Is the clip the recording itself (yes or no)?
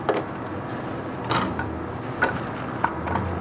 yes